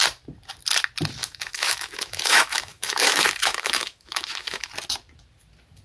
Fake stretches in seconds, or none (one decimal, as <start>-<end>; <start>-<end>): 1.2-4.7